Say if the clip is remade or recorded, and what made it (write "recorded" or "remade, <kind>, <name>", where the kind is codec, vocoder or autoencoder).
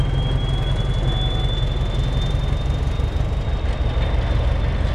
recorded